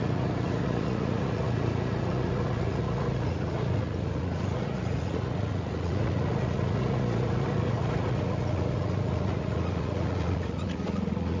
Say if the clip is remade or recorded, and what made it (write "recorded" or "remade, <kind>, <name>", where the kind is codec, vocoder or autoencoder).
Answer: remade, vocoder, Vocos